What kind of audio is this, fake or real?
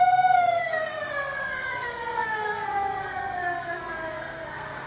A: fake